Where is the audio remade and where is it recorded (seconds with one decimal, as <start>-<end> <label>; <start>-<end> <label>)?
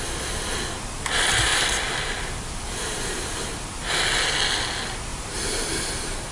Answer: 0.0-1.5 recorded; 1.5-4.0 remade; 4.0-5.1 recorded; 5.1-6.3 remade